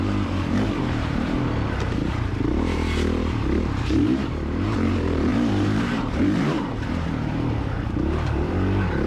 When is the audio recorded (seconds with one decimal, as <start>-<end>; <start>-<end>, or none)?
none